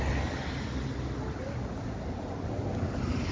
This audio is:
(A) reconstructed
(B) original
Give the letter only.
B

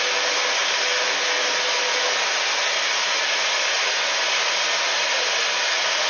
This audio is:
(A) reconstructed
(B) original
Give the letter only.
B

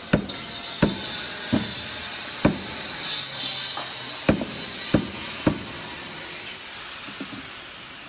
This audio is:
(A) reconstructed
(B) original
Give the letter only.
B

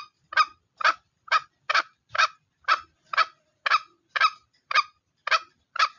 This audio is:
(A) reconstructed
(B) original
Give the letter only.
B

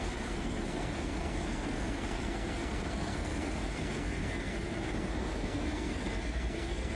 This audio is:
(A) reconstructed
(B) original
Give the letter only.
A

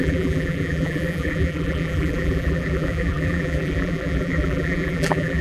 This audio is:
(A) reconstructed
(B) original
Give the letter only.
A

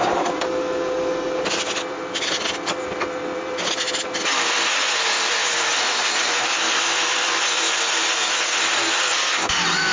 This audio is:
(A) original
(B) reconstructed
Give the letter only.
A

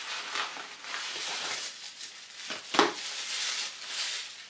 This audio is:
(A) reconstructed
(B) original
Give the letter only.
B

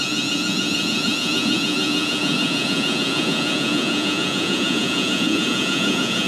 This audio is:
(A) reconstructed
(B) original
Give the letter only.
A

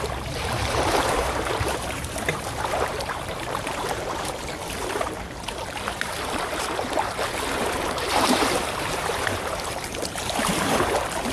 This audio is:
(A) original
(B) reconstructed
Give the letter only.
B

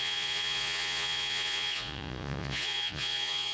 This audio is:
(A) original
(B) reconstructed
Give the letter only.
B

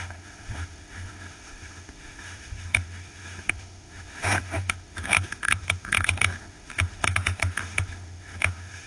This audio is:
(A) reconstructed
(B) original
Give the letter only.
A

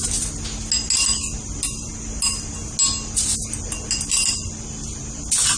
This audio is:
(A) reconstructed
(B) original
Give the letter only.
B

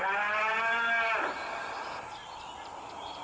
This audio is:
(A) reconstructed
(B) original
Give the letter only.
B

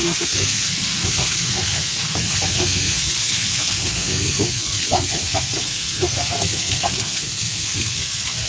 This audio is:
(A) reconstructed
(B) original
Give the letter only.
A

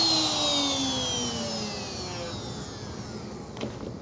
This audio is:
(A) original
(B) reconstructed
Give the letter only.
A